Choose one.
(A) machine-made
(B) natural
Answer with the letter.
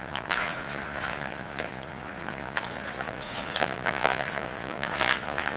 A